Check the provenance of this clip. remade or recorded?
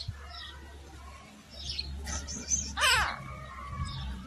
recorded